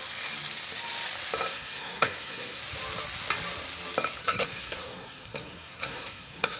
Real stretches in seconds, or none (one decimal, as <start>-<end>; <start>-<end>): 0.0-1.5; 2.6-4.2